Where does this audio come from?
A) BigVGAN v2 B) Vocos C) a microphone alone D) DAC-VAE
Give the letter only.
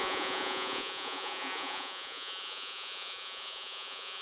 B